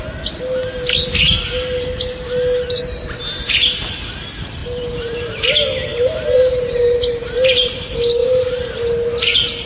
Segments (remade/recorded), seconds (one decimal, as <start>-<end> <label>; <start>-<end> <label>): 0.0-4.6 recorded; 4.6-5.4 remade; 5.4-5.9 recorded; 5.9-7.1 remade; 7.1-8.2 recorded; 8.2-8.7 remade; 8.7-9.7 recorded